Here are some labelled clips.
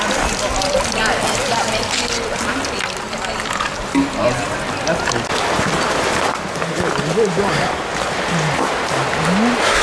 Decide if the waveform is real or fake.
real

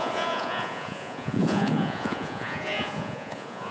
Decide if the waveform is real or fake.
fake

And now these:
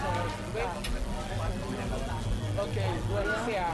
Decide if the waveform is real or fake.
real